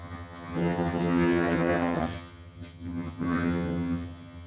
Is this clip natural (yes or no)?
no